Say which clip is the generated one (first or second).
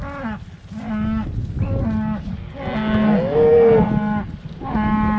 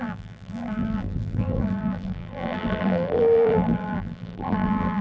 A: second